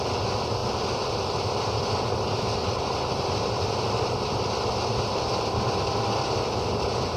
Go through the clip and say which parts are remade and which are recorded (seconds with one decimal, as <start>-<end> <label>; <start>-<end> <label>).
0.0-7.2 recorded